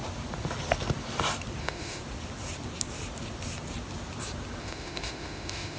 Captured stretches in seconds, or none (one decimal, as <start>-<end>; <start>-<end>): 0.0-1.6; 2.0-4.6